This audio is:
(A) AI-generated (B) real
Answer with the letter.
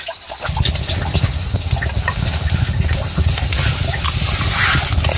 B